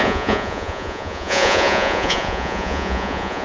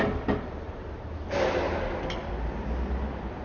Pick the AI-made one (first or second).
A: first